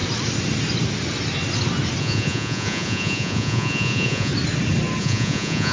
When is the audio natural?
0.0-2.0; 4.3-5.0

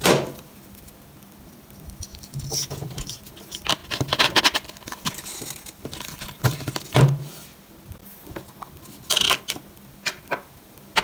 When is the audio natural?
0.0-11.0

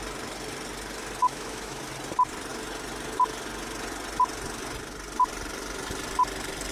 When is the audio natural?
0.0-1.2; 1.8-6.7